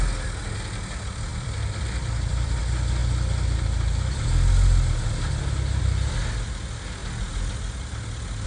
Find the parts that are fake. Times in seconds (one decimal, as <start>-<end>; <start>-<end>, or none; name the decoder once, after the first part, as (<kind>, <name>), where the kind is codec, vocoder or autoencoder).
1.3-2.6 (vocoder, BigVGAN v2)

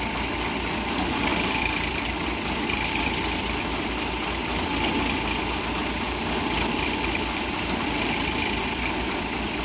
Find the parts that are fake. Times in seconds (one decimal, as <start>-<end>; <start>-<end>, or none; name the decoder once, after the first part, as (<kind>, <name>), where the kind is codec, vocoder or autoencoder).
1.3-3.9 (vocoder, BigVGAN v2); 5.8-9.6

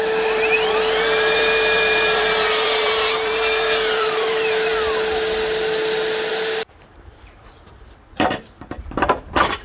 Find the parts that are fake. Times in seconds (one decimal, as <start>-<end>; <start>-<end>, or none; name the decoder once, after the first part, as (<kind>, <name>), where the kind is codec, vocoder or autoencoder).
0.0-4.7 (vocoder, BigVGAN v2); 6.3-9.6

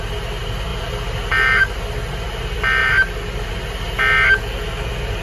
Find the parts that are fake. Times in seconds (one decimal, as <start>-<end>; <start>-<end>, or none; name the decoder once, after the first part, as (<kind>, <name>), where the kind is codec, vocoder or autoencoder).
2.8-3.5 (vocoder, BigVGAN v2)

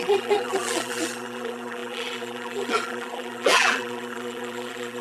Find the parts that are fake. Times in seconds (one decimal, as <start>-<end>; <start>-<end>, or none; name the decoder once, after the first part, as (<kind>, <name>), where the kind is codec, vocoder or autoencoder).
0.0-5.0 (vocoder, BigVGAN v2)